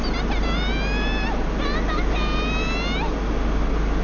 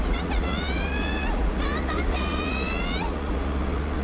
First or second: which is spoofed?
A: second